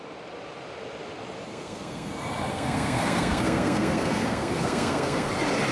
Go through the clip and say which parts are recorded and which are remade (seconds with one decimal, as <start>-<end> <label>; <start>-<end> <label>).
0.0-1.5 recorded; 1.5-2.1 remade; 2.1-2.5 recorded; 2.5-5.3 remade; 5.3-5.7 recorded